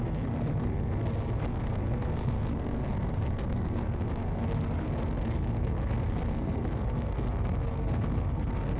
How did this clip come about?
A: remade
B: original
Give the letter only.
A